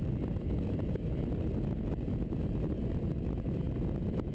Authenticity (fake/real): real